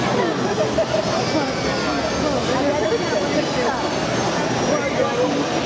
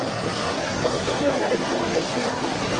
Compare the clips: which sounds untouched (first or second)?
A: first